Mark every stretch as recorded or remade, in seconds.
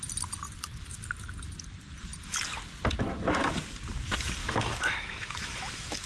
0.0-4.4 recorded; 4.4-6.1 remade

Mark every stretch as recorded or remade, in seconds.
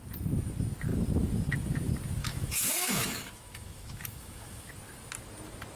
0.0-2.2 recorded; 2.2-4.7 remade; 4.7-5.8 recorded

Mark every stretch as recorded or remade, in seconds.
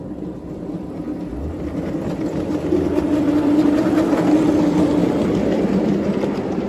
0.0-6.7 recorded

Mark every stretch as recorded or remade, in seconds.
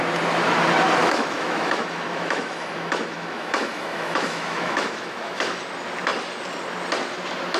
0.0-1.0 recorded; 1.0-5.6 remade; 5.6-7.6 recorded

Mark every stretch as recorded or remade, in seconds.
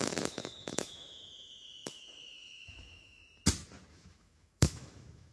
0.0-3.2 remade; 3.2-3.9 recorded; 3.9-5.3 remade